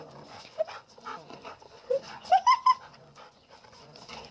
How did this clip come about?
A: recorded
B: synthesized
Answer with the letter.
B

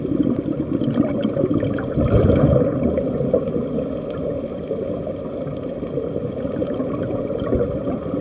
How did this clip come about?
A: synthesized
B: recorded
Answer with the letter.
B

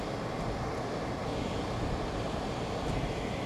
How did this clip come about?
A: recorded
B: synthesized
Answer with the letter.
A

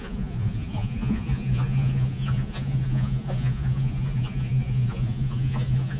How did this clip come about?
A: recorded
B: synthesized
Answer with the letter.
B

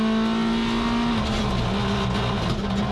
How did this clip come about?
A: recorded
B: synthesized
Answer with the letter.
A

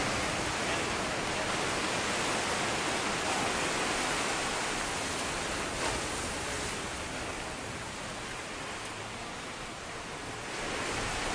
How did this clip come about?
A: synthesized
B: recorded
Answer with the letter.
B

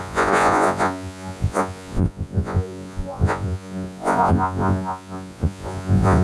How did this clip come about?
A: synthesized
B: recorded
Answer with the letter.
A